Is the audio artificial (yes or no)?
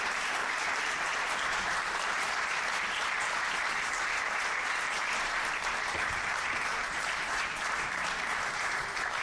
yes